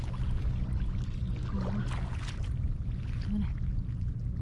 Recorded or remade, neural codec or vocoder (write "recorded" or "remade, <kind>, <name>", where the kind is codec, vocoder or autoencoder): recorded